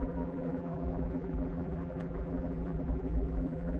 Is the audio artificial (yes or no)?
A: yes